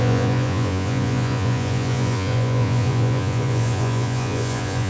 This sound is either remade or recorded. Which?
remade